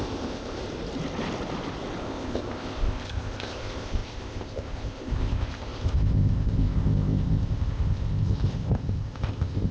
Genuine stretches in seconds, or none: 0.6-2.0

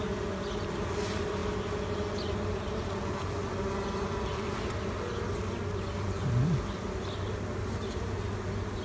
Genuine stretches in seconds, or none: 0.0-8.8